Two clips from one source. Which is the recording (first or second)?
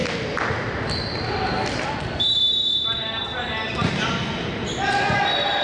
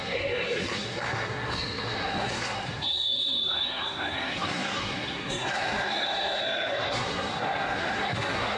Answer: first